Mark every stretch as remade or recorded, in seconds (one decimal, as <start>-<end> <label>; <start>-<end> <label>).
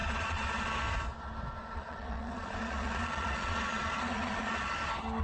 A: 0.0-0.7 remade; 0.7-1.6 recorded; 1.6-4.7 remade; 4.7-5.2 recorded